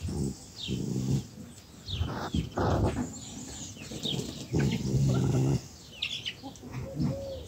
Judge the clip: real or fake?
real